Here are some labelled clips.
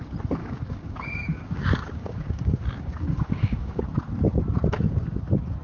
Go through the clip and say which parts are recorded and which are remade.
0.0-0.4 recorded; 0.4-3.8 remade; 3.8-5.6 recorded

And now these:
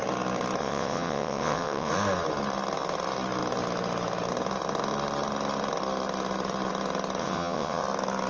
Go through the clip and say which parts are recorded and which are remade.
0.0-0.6 recorded; 0.6-1.9 remade; 1.9-7.2 recorded; 7.2-7.8 remade; 7.8-8.3 recorded

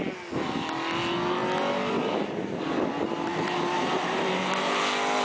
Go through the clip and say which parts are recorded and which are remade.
0.0-3.3 recorded; 3.3-4.6 remade; 4.6-5.2 recorded

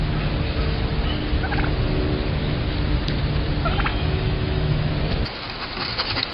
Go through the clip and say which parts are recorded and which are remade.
0.0-3.9 recorded; 3.9-4.9 remade; 4.9-6.3 recorded

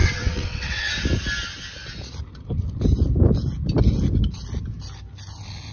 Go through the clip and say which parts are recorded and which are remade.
0.0-0.9 remade; 0.9-5.7 recorded

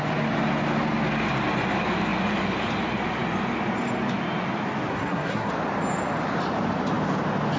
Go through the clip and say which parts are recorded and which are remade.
0.0-4.9 recorded; 4.9-5.5 remade; 5.5-7.6 recorded